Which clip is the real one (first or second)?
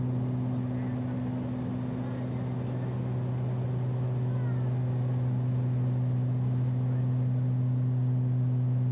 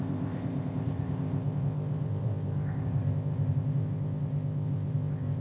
first